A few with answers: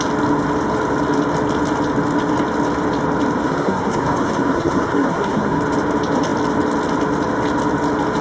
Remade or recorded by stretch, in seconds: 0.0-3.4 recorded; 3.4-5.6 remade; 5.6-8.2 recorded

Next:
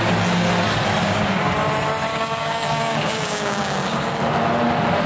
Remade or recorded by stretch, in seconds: 0.0-1.0 recorded; 1.0-1.5 remade; 1.5-2.1 recorded; 2.1-4.2 remade; 4.2-5.1 recorded

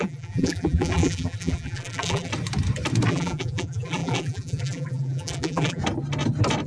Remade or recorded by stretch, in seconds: 0.0-2.3 remade; 2.3-3.1 recorded; 3.1-5.8 remade; 5.8-6.7 recorded

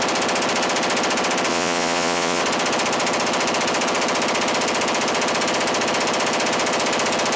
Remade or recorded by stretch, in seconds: 0.0-1.5 recorded; 1.5-2.4 remade; 2.4-7.4 recorded

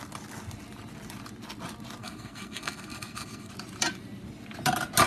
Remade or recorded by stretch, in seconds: 0.0-2.0 recorded; 2.0-3.5 remade; 3.5-5.1 recorded

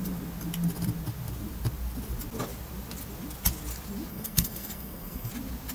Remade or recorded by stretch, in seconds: 0.0-4.1 recorded; 4.1-5.3 remade; 5.3-5.7 recorded